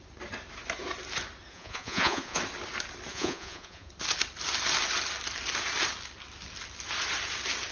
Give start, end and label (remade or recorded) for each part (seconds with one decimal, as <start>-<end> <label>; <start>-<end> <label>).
0.0-1.5 recorded; 1.5-2.4 remade; 2.4-3.1 recorded; 3.1-3.9 remade; 3.9-7.7 recorded